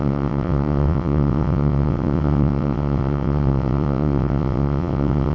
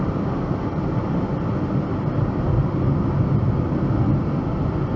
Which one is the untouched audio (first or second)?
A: second